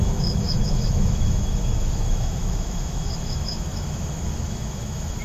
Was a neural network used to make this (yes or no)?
yes